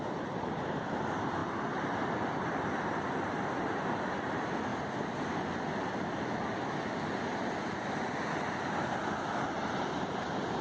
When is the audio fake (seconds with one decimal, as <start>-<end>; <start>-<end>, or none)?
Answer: 0.0-1.4; 2.4-4.7; 8.7-10.6